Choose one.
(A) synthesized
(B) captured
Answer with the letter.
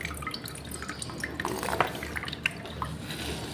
B